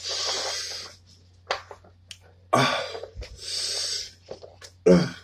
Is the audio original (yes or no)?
yes